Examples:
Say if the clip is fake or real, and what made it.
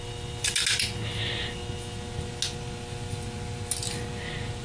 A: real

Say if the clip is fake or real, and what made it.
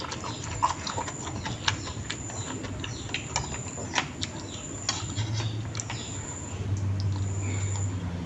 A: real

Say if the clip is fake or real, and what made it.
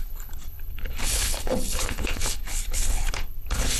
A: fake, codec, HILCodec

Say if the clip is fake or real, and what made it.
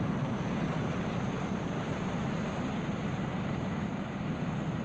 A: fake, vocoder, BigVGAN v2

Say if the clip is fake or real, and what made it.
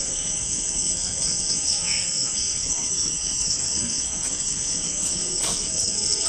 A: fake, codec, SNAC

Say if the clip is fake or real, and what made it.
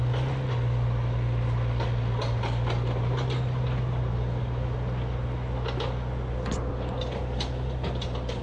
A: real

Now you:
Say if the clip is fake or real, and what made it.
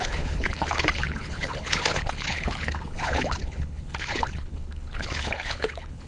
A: fake, codec, HILCodec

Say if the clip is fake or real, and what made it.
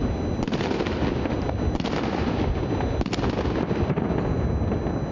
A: real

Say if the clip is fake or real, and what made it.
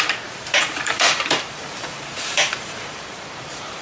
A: fake, vocoder, BigVGAN v2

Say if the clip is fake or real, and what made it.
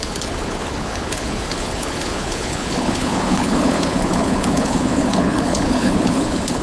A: fake, codec, HILCodec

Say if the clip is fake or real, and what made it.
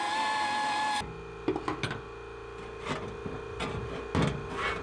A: real